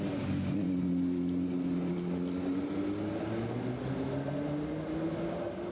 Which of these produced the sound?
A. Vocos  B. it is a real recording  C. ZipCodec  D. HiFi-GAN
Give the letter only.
B